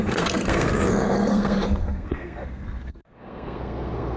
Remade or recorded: remade